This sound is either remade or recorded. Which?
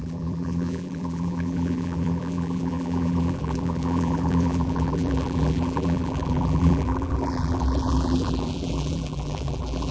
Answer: remade